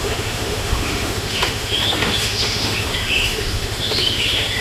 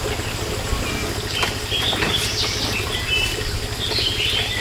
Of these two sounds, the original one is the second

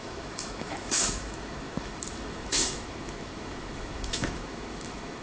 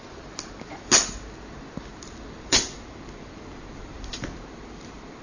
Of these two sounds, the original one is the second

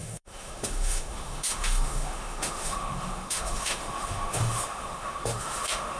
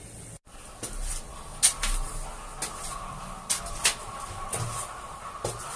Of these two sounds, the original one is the second